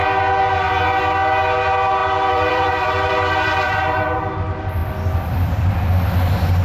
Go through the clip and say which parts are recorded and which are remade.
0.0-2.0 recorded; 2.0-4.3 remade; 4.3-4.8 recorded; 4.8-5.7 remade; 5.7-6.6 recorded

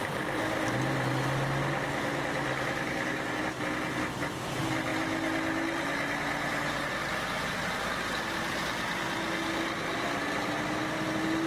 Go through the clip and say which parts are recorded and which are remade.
0.0-2.5 recorded; 2.5-3.4 remade; 3.4-11.5 recorded

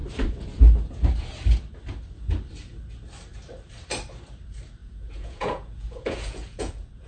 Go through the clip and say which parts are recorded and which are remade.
0.0-4.8 recorded; 4.8-7.1 remade

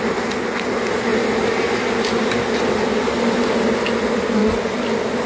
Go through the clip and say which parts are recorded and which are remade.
0.0-5.3 recorded